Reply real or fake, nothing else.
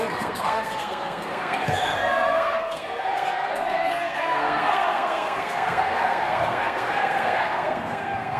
fake